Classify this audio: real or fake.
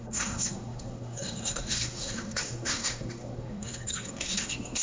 fake